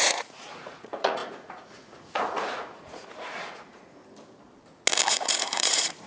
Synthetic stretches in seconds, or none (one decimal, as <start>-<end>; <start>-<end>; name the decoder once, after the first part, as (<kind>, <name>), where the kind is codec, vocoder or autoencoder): 0.0-4.0 (vocoder, Vocos); 5.1-6.1